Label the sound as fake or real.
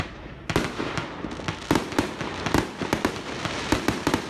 real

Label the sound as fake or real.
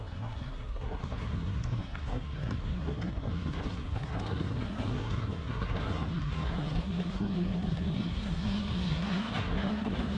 fake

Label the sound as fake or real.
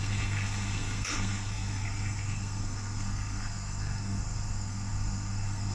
fake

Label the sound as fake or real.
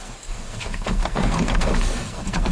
fake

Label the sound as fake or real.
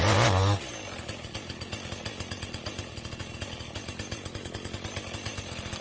real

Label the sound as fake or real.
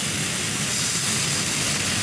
real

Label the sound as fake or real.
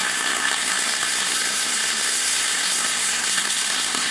fake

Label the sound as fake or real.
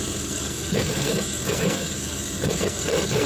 fake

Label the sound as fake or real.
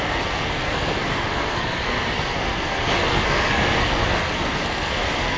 fake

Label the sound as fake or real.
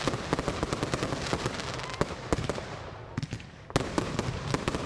real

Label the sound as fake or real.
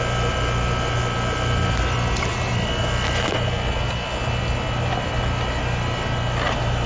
real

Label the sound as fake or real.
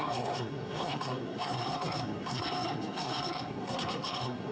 fake